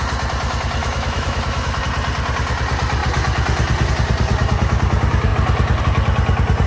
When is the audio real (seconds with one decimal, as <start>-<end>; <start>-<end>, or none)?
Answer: 0.0-0.8; 1.8-6.7